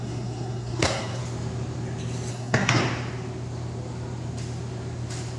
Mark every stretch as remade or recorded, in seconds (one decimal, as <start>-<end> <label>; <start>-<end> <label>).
0.0-1.2 remade; 1.2-2.3 recorded; 2.3-2.8 remade; 2.8-5.4 recorded